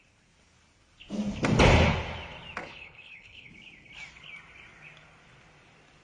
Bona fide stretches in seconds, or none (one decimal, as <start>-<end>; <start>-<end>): 0.0-2.6; 3.5-6.0